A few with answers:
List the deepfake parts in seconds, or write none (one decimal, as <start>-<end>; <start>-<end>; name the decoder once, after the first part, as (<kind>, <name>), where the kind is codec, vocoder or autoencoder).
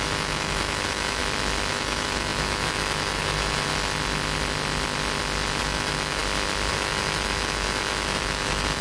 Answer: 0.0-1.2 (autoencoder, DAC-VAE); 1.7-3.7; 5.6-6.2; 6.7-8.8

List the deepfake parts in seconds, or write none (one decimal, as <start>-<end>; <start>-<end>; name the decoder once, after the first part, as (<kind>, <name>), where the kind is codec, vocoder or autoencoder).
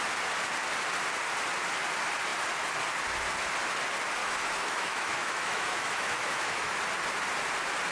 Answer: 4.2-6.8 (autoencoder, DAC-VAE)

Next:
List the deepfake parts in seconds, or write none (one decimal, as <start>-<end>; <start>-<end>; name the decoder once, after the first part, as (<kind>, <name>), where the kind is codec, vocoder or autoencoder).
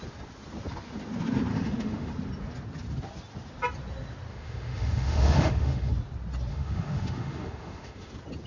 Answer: 1.5-2.1 (autoencoder, DAC-VAE); 4.3-5.9; 6.5-8.1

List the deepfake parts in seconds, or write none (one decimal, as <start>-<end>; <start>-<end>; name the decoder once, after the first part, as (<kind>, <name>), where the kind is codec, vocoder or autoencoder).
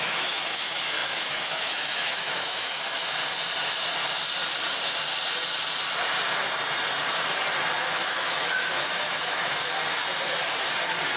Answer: 0.0-3.2 (autoencoder, DAC-VAE); 7.8-9.6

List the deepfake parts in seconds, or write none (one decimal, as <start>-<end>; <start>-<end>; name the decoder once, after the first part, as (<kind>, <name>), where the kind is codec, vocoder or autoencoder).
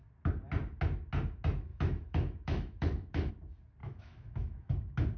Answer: 1.7-3.3 (autoencoder, DAC-VAE); 3.8-4.7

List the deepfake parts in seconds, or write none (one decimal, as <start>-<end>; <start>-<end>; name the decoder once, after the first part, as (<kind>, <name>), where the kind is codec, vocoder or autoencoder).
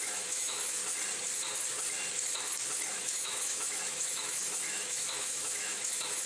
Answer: 0.0-0.8 (autoencoder, DAC-VAE); 2.9-6.3